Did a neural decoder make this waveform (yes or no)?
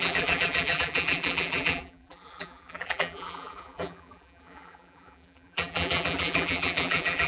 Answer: yes